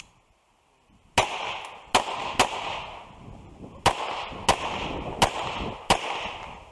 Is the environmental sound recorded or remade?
recorded